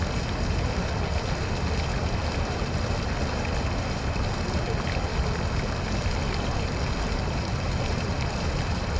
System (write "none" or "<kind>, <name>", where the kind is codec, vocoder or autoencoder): none